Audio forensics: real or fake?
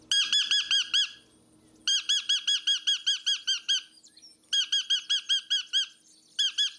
real